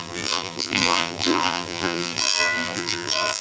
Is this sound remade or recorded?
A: remade